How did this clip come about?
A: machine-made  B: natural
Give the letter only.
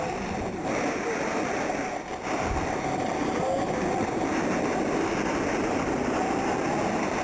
B